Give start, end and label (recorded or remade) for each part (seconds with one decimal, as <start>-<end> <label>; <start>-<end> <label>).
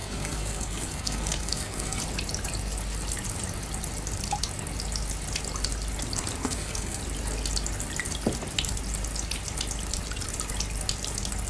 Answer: 0.0-2.0 remade; 2.0-6.4 recorded; 6.4-7.0 remade; 7.0-11.5 recorded